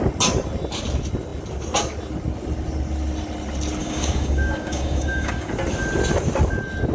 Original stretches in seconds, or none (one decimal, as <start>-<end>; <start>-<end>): 0.0-3.8; 5.5-6.9